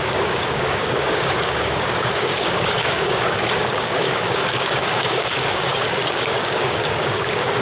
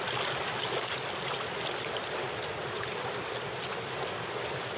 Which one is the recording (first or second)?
second